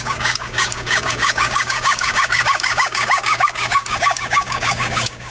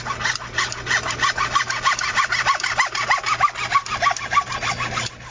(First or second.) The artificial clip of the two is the first